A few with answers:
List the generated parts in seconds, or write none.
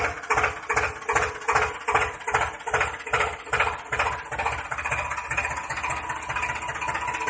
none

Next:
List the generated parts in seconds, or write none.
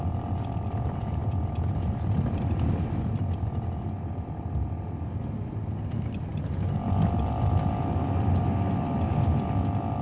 none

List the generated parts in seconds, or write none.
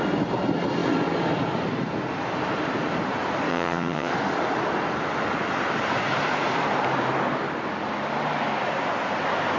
3.5-4.1 (vocoder, HiFi-GAN)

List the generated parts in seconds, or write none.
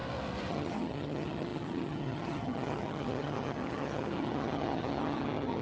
0.5-5.6 (vocoder, HiFi-GAN)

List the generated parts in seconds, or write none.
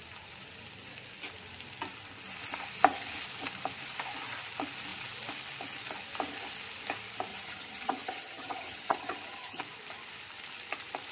7.3-9.6 (vocoder, HiFi-GAN)